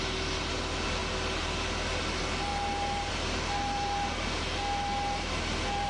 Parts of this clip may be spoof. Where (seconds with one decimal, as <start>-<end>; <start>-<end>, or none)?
none